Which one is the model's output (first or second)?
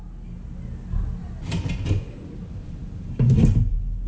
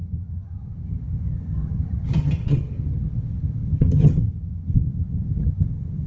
second